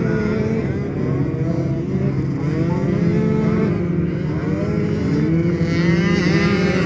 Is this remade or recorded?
recorded